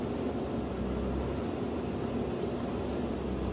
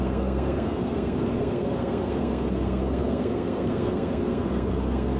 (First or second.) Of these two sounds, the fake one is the second